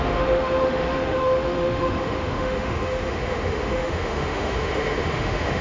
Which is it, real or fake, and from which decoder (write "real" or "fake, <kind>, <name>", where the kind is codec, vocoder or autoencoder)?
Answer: fake, autoencoder, DAC-VAE